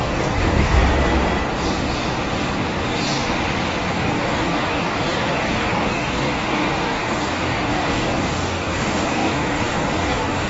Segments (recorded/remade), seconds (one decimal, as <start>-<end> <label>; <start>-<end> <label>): 0.0-0.8 remade; 0.8-3.9 recorded; 3.9-10.5 remade